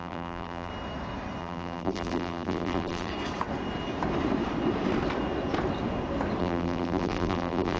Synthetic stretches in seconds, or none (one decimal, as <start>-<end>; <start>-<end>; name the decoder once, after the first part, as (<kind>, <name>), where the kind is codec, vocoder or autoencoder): 0.0-0.7 (vocoder, BigVGAN v2); 1.4-3.1; 6.4-7.8